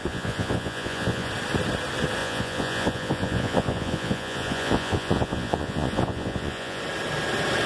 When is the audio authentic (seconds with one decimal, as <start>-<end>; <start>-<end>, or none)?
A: 1.3-2.2; 6.8-7.7

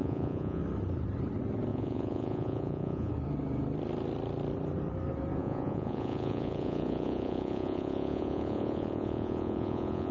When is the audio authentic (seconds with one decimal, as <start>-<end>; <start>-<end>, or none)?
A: 0.6-1.7; 3.1-5.4

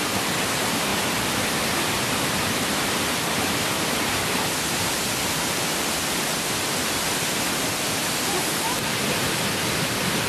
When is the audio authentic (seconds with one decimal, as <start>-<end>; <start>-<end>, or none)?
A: 0.0-10.3